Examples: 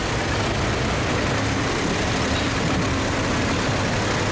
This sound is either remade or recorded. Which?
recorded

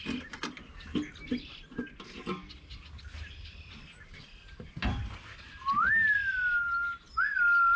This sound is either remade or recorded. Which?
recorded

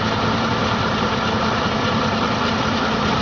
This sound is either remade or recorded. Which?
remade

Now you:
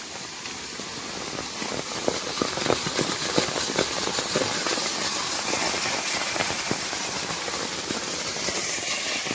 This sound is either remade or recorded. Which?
recorded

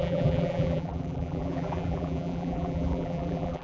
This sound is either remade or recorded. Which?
remade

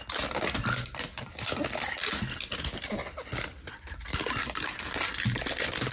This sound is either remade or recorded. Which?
remade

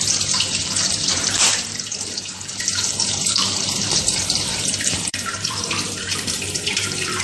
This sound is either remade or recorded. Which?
remade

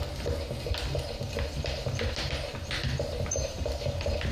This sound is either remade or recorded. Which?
recorded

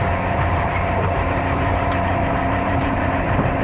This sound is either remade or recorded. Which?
remade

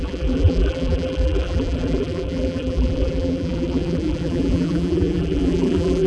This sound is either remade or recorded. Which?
remade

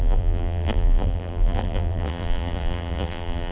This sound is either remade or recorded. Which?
remade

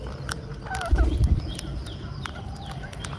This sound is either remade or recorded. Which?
remade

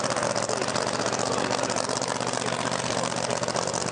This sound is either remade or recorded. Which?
recorded